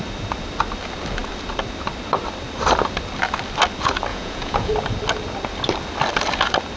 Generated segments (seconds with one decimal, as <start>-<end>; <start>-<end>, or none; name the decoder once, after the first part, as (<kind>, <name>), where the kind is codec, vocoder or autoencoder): 4.1-4.7 (vocoder, Vocos)